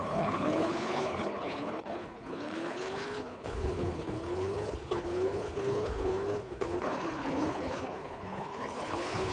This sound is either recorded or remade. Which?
remade